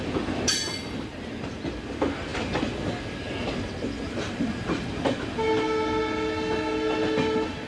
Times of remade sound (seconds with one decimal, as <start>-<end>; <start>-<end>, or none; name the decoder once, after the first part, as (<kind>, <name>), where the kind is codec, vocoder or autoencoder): none